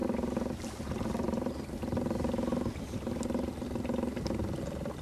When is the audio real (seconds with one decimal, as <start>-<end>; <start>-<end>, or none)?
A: 0.0-5.0